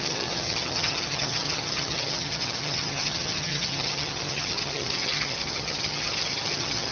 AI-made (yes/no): yes